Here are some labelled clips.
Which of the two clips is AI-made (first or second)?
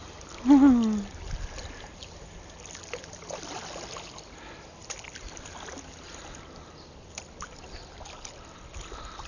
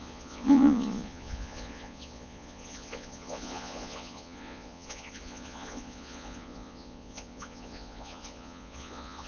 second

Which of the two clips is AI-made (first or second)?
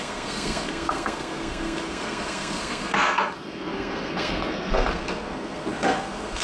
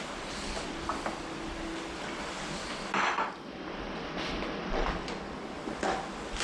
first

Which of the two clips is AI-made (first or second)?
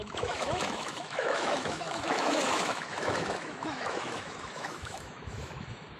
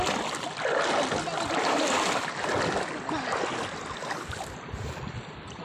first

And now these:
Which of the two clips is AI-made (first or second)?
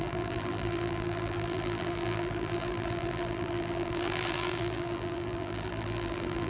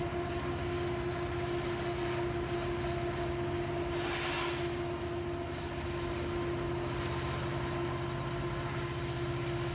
first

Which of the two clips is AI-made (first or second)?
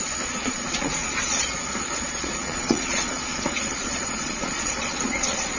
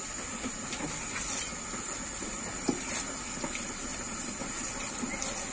first